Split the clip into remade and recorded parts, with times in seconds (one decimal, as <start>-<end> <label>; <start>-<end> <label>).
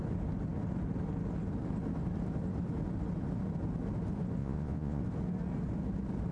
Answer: 0.0-4.4 recorded; 4.4-5.0 remade; 5.0-6.3 recorded